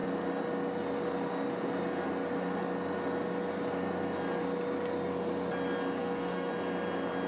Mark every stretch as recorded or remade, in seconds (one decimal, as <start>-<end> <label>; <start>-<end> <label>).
0.0-6.0 recorded; 6.0-6.5 remade; 6.5-7.3 recorded